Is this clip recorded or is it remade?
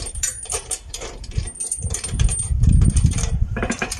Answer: remade